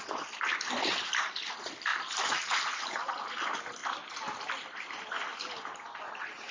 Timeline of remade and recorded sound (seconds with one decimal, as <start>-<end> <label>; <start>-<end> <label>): 0.0-6.5 recorded